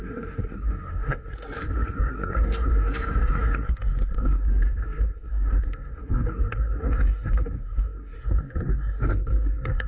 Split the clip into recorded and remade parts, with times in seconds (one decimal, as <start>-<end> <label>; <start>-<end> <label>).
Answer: 0.0-9.9 remade